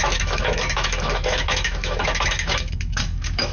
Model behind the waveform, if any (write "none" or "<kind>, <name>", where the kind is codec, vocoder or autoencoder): autoencoder, DAC-VAE